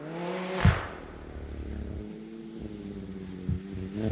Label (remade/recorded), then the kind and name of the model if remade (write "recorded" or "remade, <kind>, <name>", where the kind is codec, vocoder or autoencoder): recorded